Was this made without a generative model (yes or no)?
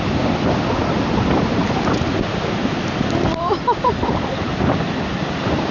yes